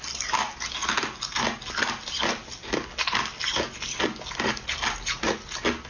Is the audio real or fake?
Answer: real